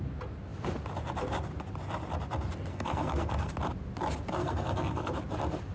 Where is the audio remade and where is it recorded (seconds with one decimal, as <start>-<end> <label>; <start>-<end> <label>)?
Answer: 0.0-2.7 recorded; 2.7-3.5 remade; 3.5-4.4 recorded; 4.4-5.1 remade; 5.1-5.7 recorded